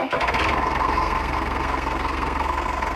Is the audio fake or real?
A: fake